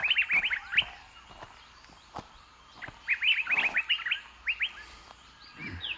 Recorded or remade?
recorded